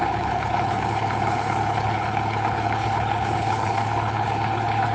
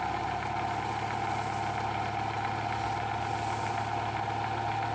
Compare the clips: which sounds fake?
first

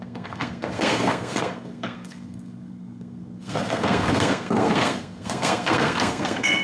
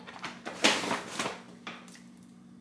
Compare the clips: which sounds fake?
first